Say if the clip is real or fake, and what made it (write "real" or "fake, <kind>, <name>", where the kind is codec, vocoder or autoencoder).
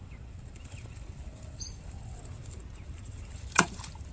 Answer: fake, vocoder, BigVGAN v2